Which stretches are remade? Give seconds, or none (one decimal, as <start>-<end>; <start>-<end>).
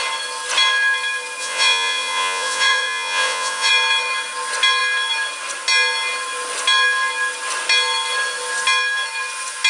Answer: 1.4-3.7